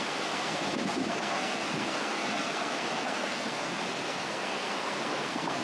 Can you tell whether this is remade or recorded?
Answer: remade